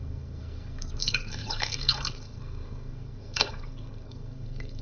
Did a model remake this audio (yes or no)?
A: yes